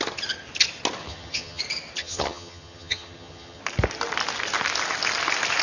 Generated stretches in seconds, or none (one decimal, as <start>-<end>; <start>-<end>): 1.0-1.6; 2.0-3.6

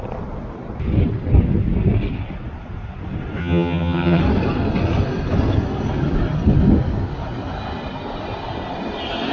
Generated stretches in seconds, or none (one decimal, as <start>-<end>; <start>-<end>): 3.4-4.2